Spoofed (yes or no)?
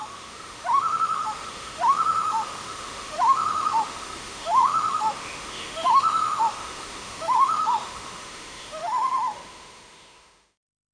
yes